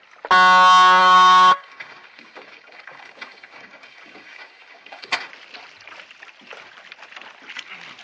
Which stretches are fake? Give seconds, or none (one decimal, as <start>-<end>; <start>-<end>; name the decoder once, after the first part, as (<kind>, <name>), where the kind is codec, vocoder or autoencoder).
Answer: 1.0-5.3 (codec, DAC)